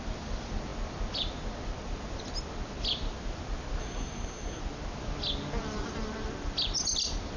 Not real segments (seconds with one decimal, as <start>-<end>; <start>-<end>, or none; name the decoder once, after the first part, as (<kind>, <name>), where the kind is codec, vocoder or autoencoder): 3.8-4.6 (codec, SNAC)